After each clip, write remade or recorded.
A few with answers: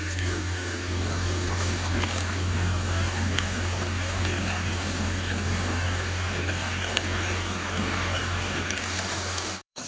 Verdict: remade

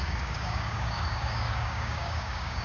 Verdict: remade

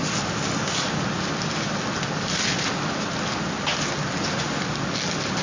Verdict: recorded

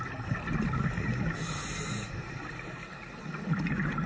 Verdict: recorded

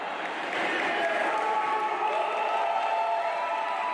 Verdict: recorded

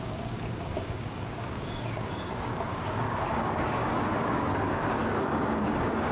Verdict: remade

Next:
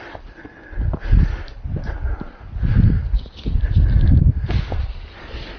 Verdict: recorded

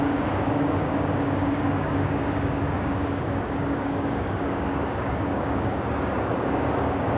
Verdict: remade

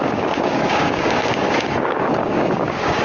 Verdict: remade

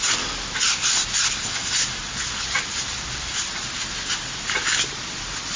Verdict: recorded